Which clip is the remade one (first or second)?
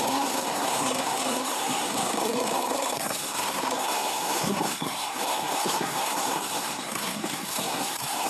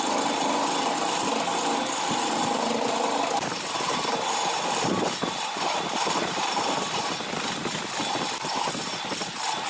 first